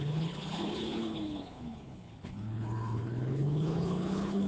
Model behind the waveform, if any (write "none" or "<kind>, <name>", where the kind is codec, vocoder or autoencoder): codec, HILCodec